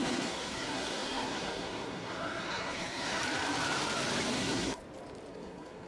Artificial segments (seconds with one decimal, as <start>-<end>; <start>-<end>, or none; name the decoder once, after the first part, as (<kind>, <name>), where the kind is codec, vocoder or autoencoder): 0.0-3.2 (codec, SNAC); 4.3-4.8; 5.3-5.9